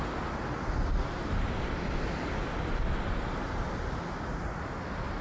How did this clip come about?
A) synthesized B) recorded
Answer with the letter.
B